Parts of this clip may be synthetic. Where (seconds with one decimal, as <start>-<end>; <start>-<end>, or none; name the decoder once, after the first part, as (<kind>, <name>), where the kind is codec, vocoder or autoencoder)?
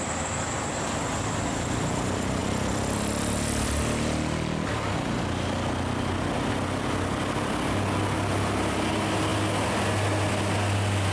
none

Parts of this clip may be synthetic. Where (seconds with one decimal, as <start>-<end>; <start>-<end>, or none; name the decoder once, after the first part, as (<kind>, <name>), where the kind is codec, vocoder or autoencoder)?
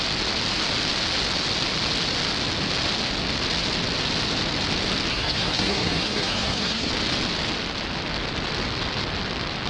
5.1-6.9 (codec, SNAC)